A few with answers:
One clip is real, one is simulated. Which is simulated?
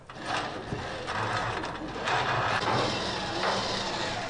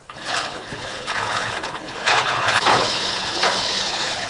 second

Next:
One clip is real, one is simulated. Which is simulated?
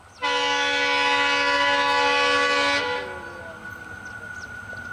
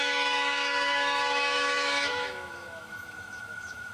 second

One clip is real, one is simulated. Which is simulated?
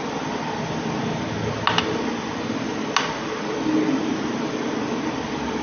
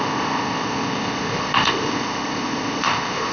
second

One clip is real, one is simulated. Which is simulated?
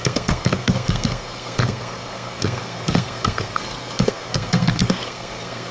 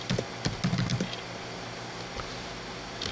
first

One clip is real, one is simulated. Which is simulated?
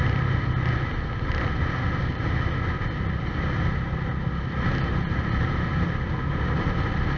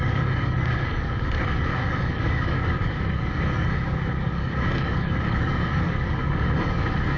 second